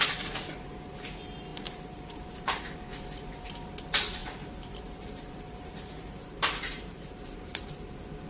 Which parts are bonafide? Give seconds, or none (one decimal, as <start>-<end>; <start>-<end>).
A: 0.0-1.5; 2.7-4.2; 7.9-8.3